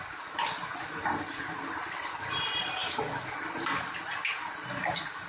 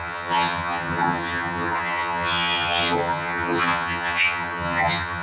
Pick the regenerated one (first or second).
second